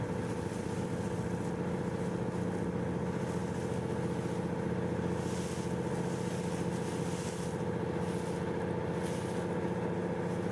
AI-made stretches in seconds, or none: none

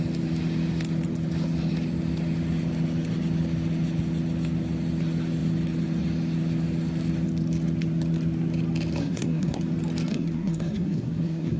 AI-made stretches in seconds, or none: 9.0-9.6 (codec, SNAC); 10.1-11.6

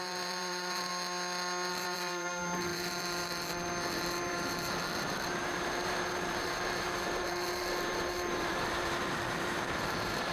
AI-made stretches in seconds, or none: 0.0-0.9 (vocoder, BigVGAN v2); 1.7-10.3